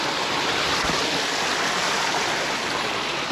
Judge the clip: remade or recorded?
recorded